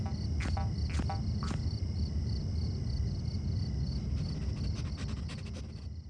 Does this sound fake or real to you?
real